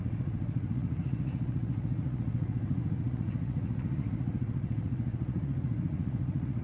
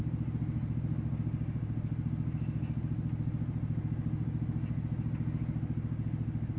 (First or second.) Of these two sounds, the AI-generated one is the first